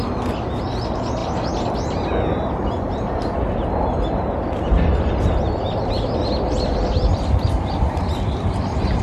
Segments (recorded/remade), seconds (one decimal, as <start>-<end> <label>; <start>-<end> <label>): 0.0-9.0 recorded